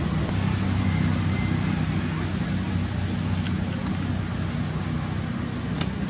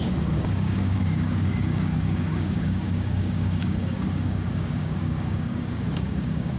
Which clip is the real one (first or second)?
first